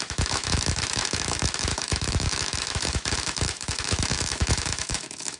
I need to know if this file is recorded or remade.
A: remade